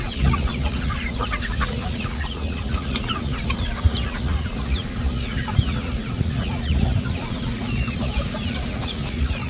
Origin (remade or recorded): remade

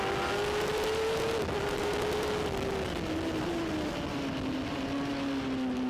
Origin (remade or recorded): recorded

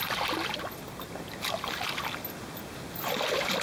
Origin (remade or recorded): recorded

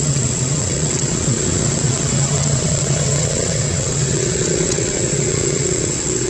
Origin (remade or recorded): remade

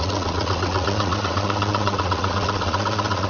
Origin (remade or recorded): remade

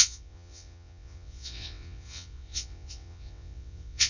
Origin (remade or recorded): remade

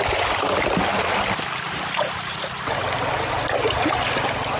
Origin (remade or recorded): recorded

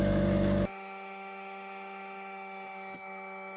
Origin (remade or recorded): remade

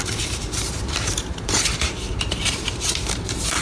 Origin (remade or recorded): remade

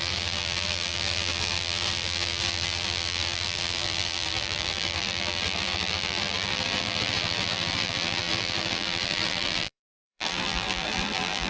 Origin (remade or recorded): remade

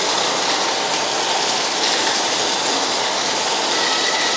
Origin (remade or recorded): recorded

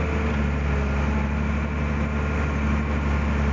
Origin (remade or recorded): recorded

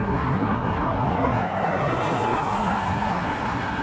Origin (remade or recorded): remade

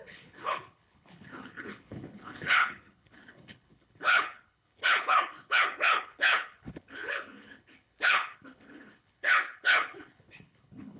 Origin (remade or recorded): remade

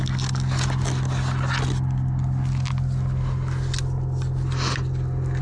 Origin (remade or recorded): recorded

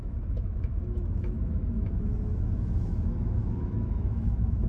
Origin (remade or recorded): remade